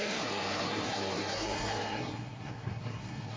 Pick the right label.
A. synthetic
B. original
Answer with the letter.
A